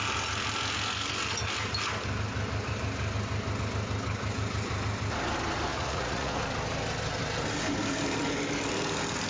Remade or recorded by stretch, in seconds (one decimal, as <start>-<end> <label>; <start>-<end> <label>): 0.0-5.7 recorded; 5.7-6.3 remade; 6.3-9.3 recorded